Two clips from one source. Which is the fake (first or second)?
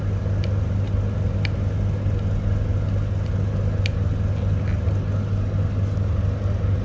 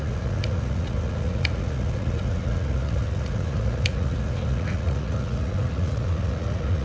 second